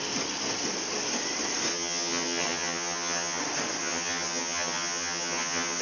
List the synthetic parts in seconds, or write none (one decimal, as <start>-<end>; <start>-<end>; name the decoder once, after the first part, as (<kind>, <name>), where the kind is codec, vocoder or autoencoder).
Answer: 1.7-3.4 (vocoder, HiFi-GAN); 3.8-5.8